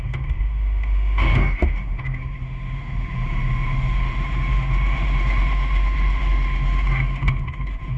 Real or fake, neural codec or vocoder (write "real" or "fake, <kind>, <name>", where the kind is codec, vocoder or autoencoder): fake, autoencoder, DAC-VAE